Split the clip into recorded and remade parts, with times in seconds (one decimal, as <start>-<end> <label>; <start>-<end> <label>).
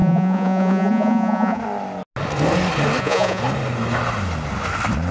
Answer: 0.0-1.6 remade; 1.6-3.0 recorded; 3.0-3.4 remade; 3.4-5.1 recorded